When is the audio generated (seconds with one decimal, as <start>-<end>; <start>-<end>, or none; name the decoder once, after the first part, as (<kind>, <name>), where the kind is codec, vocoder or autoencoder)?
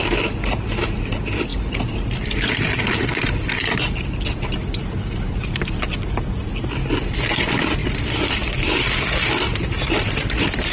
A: none